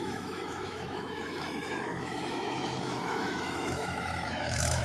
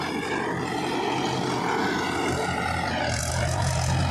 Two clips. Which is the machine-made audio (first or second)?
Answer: first